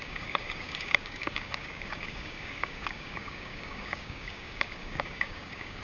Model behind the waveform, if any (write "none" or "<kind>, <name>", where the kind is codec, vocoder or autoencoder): codec, DAC